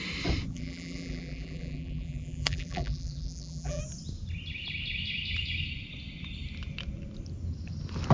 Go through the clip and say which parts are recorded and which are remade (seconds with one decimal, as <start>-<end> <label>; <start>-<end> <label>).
0.0-0.5 recorded; 0.5-3.8 remade; 3.8-8.1 recorded